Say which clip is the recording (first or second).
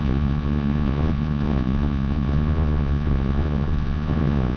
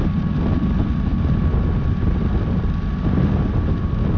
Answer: second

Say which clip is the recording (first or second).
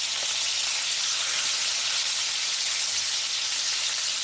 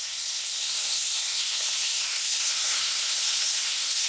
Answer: first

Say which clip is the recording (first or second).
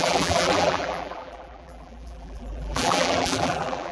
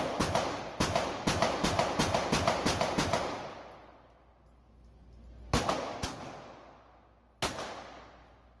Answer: second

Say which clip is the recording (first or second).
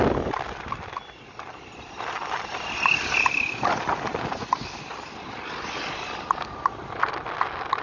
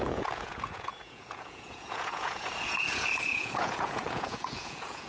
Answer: first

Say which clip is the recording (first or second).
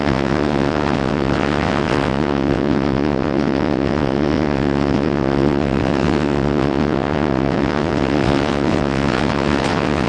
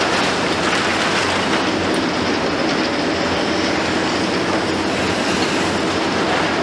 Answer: second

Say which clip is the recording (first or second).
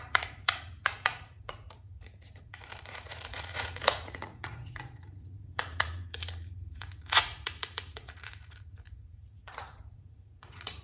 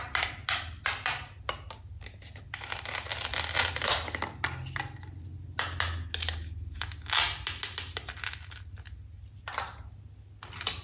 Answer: second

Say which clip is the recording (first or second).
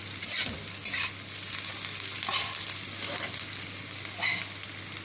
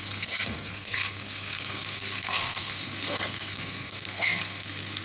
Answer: first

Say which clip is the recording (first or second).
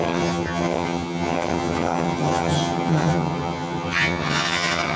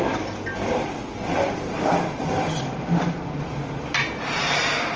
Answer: second